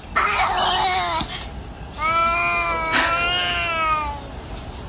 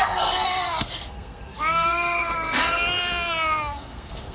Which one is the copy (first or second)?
second